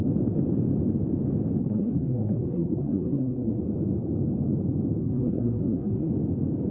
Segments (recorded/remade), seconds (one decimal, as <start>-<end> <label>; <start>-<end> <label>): 0.0-1.6 recorded; 1.6-3.6 remade; 3.6-5.0 recorded; 5.0-6.1 remade; 6.1-6.7 recorded